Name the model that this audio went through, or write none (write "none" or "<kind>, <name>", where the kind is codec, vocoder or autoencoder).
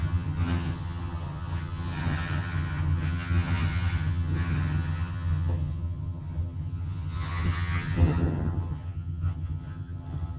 vocoder, HiFi-GAN